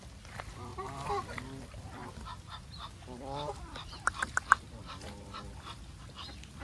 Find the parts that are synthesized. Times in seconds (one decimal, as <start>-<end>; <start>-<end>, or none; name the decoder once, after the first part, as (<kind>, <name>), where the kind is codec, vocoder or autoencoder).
0.7-1.4 (vocoder, BigVGAN v2); 2.0-5.8